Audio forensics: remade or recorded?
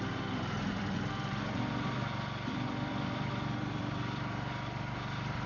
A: remade